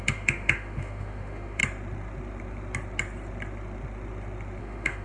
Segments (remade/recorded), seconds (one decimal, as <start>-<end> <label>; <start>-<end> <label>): 0.0-1.6 remade; 1.6-4.6 recorded; 4.6-5.0 remade